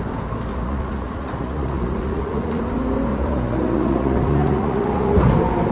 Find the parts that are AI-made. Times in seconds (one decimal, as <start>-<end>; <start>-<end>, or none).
0.5-2.6; 3.1-5.3